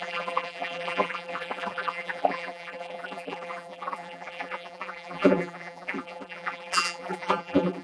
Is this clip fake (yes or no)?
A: yes